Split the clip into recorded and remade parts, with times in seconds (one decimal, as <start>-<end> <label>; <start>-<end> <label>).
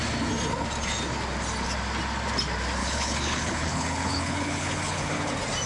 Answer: 0.0-2.8 recorded; 2.8-5.3 remade; 5.3-5.7 recorded